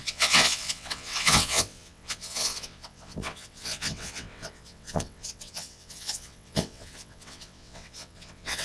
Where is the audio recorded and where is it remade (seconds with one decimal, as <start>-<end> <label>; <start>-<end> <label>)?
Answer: 0.0-8.6 remade